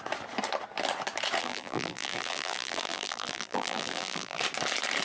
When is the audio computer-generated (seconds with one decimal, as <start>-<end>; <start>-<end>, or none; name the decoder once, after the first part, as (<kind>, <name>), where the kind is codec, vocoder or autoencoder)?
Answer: 1.4-4.4 (vocoder, BigVGAN v2)